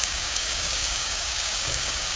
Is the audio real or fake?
fake